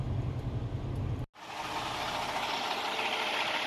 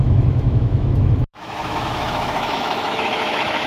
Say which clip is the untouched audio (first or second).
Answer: first